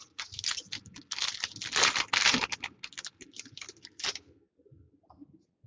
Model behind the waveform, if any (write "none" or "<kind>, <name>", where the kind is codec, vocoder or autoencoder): none